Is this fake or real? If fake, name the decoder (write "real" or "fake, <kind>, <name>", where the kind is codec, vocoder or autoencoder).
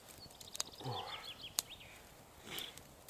real